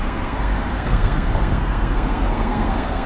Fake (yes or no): yes